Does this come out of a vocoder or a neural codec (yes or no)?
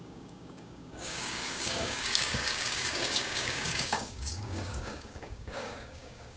yes